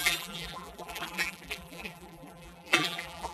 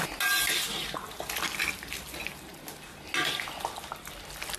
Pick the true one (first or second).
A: second